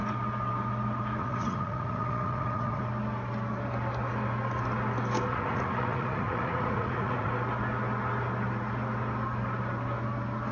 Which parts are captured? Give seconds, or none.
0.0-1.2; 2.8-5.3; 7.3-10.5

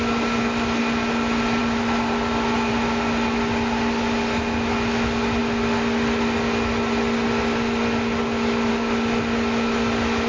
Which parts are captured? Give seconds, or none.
0.0-10.3